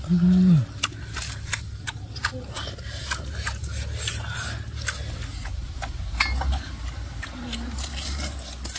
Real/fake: real